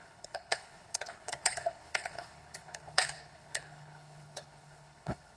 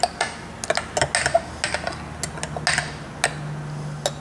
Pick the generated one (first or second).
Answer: first